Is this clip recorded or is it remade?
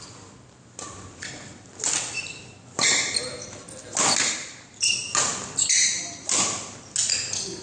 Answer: recorded